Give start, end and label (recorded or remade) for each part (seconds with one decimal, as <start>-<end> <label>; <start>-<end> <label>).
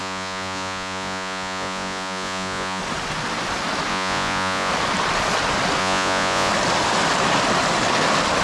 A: 0.0-2.8 remade; 2.8-3.9 recorded; 3.9-4.7 remade; 4.7-5.8 recorded; 5.8-6.5 remade; 6.5-8.4 recorded